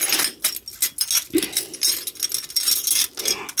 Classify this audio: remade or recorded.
recorded